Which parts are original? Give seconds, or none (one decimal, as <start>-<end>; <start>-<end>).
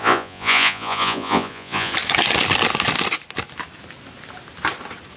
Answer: 1.9-5.2